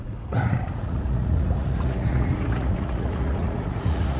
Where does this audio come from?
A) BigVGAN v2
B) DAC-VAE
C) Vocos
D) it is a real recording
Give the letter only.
C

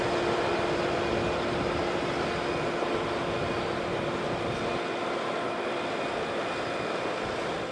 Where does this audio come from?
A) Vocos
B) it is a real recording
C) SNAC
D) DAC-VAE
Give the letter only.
B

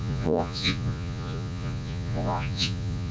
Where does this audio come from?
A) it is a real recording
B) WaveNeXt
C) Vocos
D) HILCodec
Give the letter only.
C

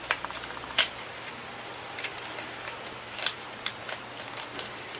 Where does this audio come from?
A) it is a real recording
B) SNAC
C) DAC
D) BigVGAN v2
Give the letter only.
A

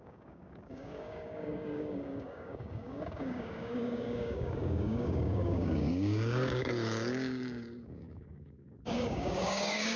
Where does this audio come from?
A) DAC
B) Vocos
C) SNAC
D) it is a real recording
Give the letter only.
A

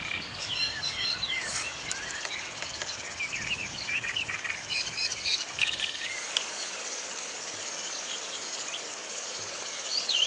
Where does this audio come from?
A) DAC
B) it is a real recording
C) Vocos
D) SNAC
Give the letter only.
A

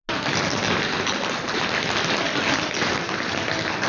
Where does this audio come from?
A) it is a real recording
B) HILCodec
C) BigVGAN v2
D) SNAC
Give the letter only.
A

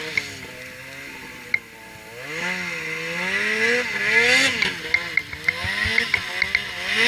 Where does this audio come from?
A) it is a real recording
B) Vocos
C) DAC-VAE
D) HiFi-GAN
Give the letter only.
A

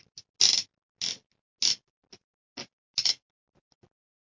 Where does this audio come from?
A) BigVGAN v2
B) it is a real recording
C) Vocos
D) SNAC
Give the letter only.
B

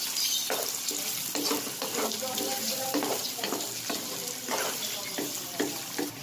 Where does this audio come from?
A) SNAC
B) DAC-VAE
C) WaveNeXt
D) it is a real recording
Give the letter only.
D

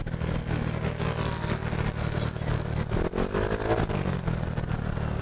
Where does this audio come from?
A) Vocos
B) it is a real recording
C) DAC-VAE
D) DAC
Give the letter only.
B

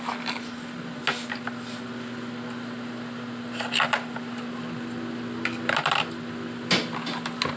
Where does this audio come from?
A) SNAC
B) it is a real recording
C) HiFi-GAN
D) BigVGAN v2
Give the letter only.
B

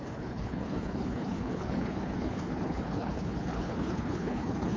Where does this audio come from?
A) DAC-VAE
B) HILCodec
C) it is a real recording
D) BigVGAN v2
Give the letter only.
B